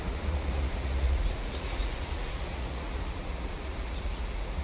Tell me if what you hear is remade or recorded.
remade